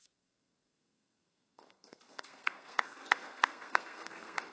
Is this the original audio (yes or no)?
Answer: no